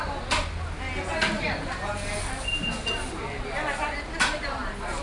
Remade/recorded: recorded